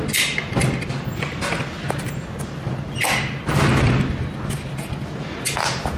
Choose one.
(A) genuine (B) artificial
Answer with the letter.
A